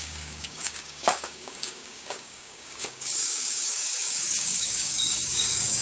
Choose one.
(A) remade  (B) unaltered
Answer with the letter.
A